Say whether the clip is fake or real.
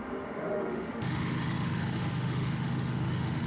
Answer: fake